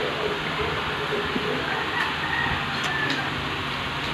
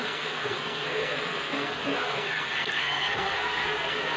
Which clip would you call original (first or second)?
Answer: first